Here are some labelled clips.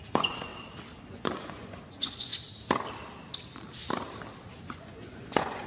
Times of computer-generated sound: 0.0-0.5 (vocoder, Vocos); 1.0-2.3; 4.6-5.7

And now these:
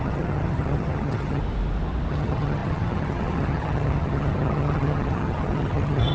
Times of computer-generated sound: 0.0-1.4 (vocoder, HiFi-GAN); 2.1-6.1

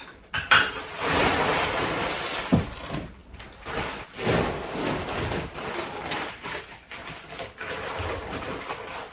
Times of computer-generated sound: none

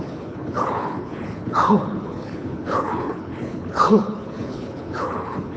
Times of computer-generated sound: 0.0-5.6 (codec, HILCodec)